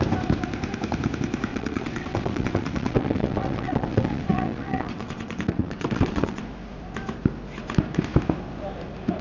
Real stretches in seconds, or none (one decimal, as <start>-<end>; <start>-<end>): 0.0-1.5; 6.4-9.2